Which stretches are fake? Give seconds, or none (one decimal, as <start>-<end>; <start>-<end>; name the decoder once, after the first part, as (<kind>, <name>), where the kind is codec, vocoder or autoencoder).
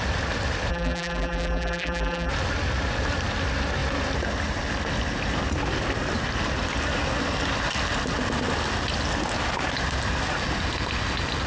0.7-2.3 (vocoder, BigVGAN v2)